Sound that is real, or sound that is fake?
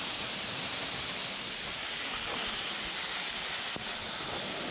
real